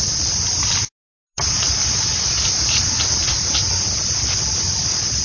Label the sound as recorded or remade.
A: recorded